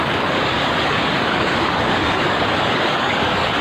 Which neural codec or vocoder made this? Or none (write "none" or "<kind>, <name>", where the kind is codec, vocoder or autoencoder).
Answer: codec, DAC